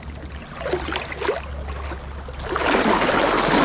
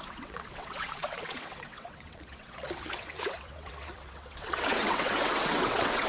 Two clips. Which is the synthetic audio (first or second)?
second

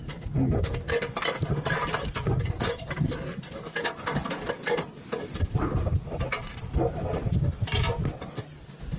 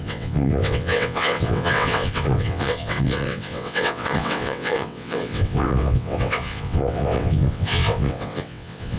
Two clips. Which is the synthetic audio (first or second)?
second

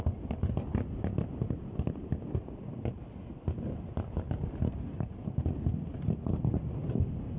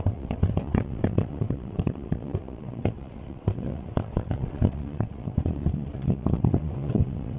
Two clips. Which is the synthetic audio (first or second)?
second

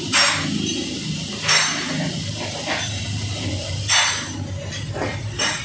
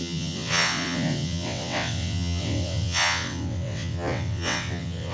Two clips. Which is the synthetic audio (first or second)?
second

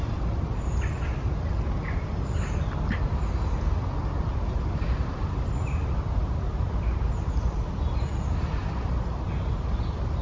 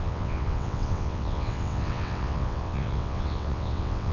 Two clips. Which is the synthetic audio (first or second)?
second